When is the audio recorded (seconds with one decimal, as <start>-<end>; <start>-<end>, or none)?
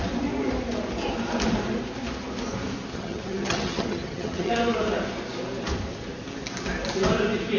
0.0-2.9; 4.5-7.6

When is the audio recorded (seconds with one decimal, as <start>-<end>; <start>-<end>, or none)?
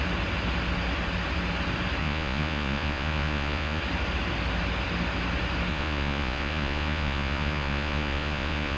0.0-2.0; 3.8-5.7